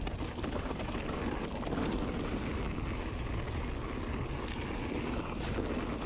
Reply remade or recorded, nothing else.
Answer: recorded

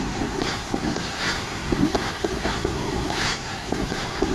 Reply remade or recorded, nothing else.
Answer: remade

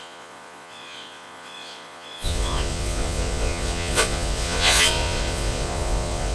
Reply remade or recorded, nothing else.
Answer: remade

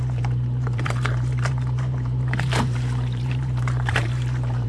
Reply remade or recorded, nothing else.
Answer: remade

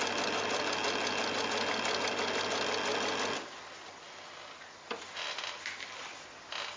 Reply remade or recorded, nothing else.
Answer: recorded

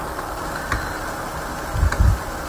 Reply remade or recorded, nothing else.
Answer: recorded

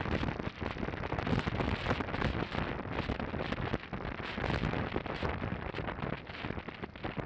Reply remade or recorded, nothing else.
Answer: recorded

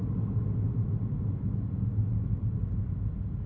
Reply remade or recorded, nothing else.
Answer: recorded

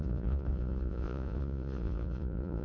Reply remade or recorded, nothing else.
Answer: remade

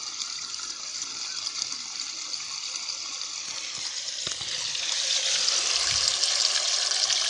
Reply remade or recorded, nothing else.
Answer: recorded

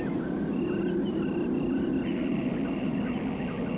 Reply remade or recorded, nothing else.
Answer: recorded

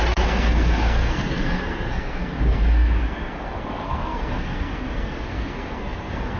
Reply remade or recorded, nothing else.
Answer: remade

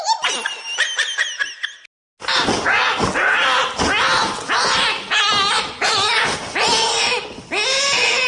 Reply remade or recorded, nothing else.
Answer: recorded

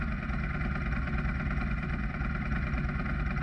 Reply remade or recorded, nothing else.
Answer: recorded